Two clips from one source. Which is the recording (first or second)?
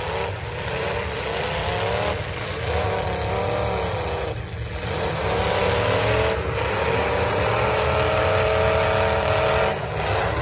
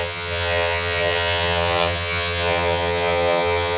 first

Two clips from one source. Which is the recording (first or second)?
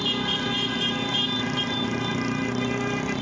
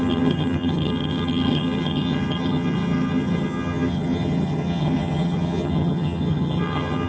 first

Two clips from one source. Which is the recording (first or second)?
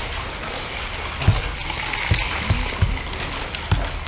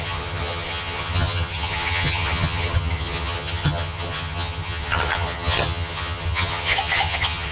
first